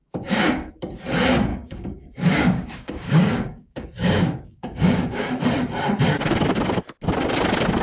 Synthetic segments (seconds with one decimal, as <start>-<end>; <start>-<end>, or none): 0.0-0.7; 1.5-5.4